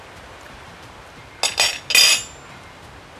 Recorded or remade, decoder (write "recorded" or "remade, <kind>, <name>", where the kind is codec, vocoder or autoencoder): recorded